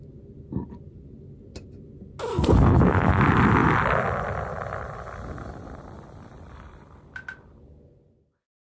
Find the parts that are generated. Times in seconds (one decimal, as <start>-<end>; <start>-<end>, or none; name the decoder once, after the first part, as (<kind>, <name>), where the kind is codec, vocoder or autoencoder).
2.3-3.2 (codec, SNAC)